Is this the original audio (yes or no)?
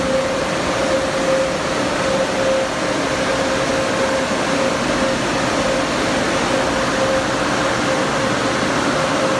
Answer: yes